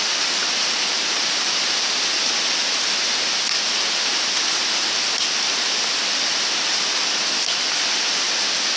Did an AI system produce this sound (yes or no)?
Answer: no